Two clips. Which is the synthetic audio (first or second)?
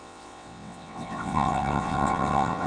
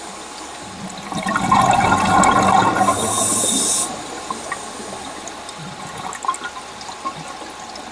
first